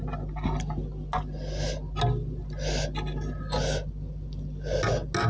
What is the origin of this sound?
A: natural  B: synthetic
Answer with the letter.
A